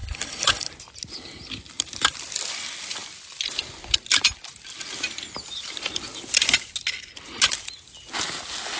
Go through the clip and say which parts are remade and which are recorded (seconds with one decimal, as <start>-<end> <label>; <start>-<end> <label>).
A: 0.0-0.7 remade; 0.7-8.8 recorded